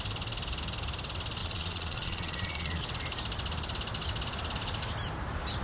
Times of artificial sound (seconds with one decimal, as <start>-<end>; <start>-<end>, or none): 1.4-2.8